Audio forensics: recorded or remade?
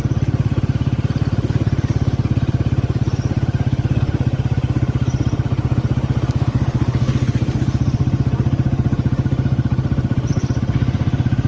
recorded